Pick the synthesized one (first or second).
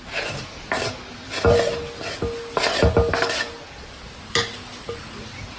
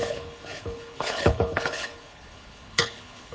second